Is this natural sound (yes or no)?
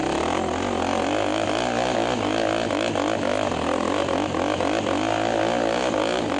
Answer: yes